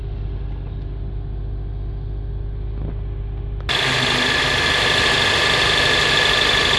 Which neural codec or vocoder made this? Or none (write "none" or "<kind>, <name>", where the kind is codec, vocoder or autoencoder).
none